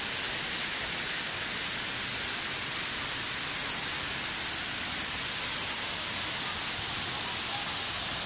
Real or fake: real